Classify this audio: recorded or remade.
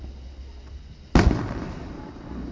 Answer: recorded